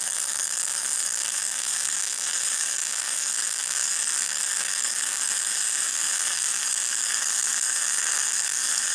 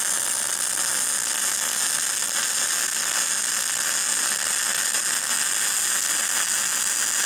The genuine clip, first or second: second